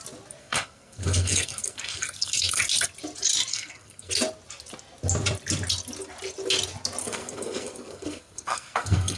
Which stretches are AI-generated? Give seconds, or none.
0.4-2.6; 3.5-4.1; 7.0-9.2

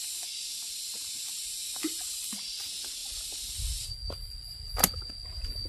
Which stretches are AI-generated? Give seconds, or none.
none

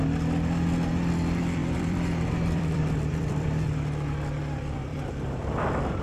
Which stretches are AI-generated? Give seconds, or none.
1.6-3.5; 4.9-5.6

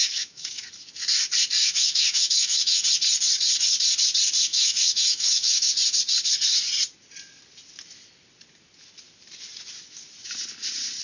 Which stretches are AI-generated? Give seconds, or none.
0.0-0.7; 1.6-2.8; 4.5-5.7

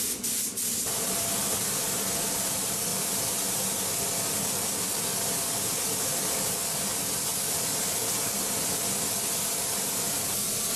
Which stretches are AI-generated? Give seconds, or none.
none

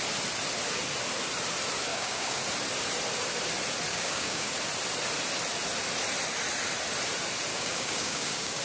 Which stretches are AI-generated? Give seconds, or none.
1.9-2.4; 3.9-4.5; 7.5-8.6